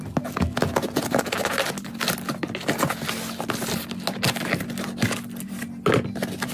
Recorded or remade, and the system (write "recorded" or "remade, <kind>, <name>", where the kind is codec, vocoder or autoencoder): recorded